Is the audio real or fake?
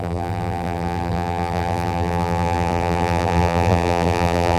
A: fake